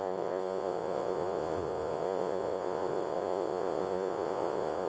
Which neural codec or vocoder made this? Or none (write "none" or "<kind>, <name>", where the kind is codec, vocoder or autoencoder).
vocoder, Vocos